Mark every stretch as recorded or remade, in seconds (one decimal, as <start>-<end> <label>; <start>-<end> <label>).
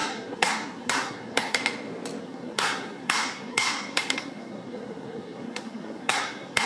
0.0-1.6 remade; 1.6-2.2 recorded; 2.2-6.7 remade